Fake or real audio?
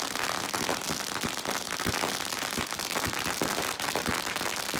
real